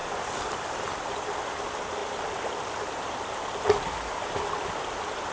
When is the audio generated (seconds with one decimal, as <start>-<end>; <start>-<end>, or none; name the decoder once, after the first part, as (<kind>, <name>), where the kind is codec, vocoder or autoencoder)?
0.0-0.6 (vocoder, BigVGAN v2); 2.0-2.6